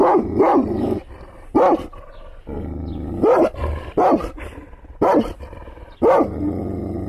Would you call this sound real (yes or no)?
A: yes